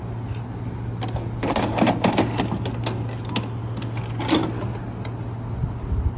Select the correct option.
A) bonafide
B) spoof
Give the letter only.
A